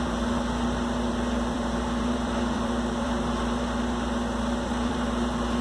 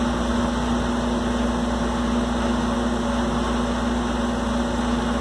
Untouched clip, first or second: second